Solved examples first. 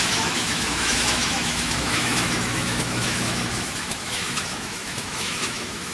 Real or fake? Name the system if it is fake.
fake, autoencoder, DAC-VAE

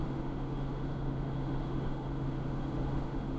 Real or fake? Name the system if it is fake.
fake, autoencoder, DAC-VAE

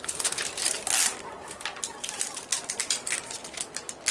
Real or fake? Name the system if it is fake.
real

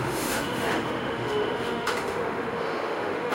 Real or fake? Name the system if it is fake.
fake, autoencoder, DAC-VAE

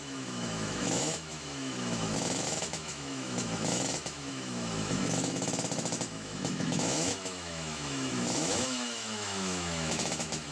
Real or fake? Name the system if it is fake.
fake, autoencoder, DAC-VAE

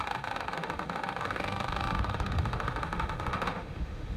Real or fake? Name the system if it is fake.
fake, autoencoder, DAC-VAE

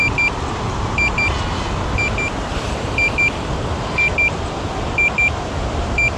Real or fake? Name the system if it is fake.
real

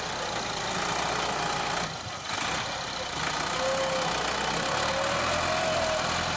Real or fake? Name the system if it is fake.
real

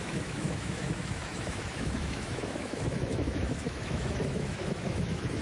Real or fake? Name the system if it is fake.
fake, autoencoder, DAC-VAE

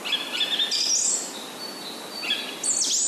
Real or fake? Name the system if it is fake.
real